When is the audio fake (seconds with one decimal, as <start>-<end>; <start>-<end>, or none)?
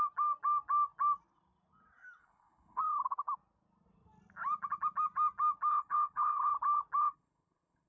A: 2.2-2.8; 5.7-6.5; 7.0-7.9